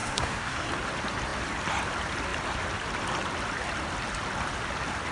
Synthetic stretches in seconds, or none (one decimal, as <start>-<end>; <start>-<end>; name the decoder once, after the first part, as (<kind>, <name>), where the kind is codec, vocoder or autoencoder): 0.0-0.7 (codec, SNAC)